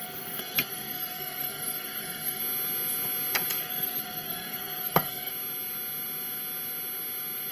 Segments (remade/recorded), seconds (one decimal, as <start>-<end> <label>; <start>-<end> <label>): 0.0-2.4 remade; 2.4-3.6 recorded; 3.6-5.3 remade; 5.3-7.5 recorded